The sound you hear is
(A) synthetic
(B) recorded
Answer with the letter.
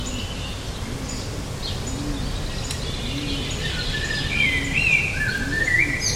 B